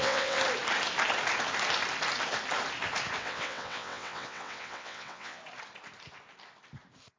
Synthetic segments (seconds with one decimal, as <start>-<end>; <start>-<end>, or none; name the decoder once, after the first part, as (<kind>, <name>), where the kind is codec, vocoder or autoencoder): 0.0-0.4 (vocoder, WaveNeXt); 3.2-5.4